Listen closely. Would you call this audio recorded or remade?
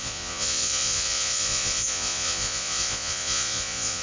remade